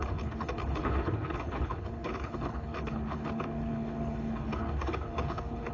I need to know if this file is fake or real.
fake